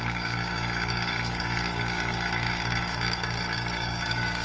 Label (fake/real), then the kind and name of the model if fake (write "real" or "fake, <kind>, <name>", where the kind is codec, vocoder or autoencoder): fake, codec, DAC